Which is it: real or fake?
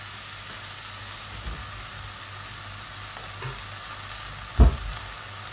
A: real